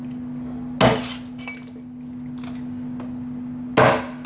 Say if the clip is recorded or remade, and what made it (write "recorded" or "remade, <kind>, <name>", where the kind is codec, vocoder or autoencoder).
recorded